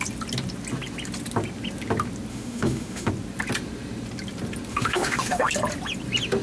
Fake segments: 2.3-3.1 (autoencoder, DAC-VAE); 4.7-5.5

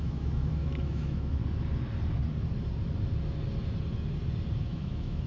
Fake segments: 0.0-1.4 (autoencoder, DAC-VAE); 4.6-5.3

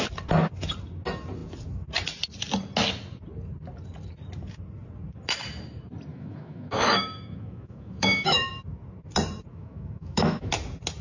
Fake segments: 6.1-8.5 (autoencoder, DAC-VAE); 9.5-10.5

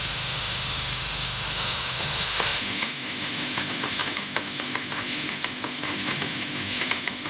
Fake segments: 0.0-7.3 (autoencoder, DAC-VAE)